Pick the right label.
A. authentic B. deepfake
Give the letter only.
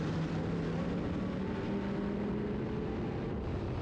A